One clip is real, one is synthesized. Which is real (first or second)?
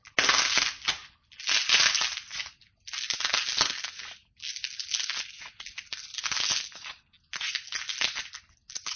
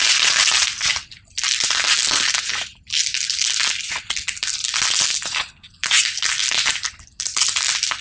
first